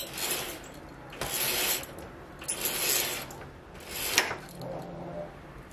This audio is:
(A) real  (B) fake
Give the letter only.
A